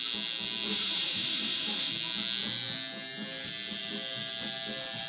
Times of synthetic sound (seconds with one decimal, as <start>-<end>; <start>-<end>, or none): 0.7-1.9